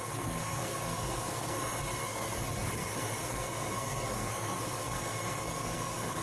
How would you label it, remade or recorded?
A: remade